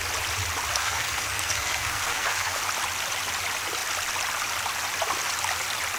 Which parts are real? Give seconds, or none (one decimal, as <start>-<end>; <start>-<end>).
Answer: 0.0-0.7; 2.6-6.0